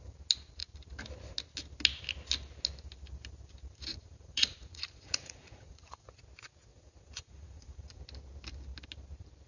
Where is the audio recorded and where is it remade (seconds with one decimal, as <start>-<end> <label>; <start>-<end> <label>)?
0.0-3.9 recorded; 3.9-6.2 remade; 6.2-6.7 recorded; 6.7-8.0 remade; 8.0-9.5 recorded